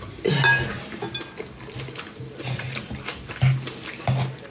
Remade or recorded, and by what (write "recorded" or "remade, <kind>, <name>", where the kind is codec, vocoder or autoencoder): recorded